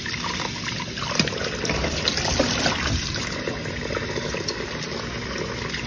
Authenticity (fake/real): real